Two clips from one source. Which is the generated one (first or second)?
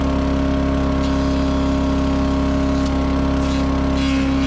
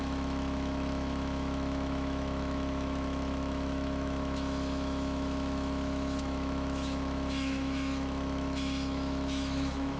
second